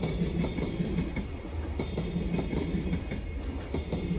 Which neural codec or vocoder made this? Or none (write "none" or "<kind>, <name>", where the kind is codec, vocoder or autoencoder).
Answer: none